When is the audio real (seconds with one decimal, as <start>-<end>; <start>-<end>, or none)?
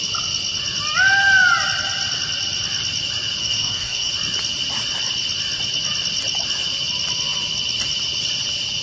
0.0-3.4; 4.1-8.8